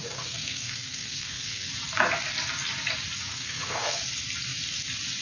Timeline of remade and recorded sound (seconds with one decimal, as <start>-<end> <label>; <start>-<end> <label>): 0.0-1.7 remade; 1.7-3.3 recorded; 3.3-4.0 remade; 4.0-5.2 recorded